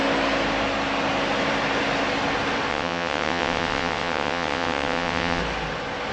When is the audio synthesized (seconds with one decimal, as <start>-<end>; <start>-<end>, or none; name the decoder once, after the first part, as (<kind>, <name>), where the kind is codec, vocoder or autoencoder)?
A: 2.7-5.4 (vocoder, WaveNeXt)